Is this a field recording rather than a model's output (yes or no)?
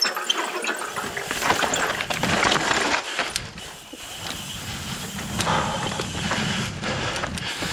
yes